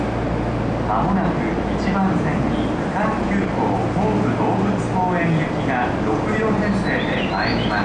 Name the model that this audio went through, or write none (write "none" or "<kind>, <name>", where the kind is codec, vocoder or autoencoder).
none